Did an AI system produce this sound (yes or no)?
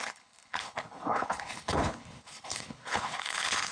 yes